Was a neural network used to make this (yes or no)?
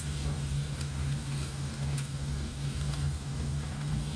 yes